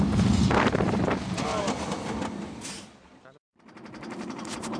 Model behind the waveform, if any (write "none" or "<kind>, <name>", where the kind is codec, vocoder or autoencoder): none